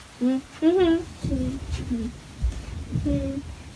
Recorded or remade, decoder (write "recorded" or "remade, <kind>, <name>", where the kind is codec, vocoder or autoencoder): recorded